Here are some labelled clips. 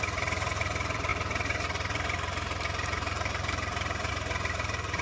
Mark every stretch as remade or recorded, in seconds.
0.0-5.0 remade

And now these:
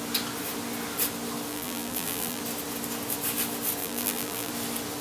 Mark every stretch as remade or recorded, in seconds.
0.0-1.5 recorded; 1.5-2.4 remade; 2.4-3.8 recorded; 3.8-4.5 remade; 4.5-5.0 recorded

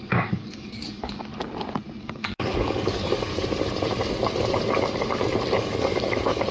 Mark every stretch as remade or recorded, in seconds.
0.0-1.3 remade; 1.3-2.0 recorded; 2.0-3.3 remade; 3.3-5.6 recorded; 5.6-6.5 remade

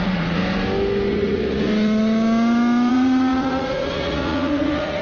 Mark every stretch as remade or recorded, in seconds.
0.0-0.4 remade; 0.4-1.1 recorded; 1.1-1.7 remade; 1.7-2.9 recorded; 2.9-5.0 remade